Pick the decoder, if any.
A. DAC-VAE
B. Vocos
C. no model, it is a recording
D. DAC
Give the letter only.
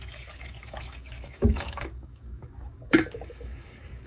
D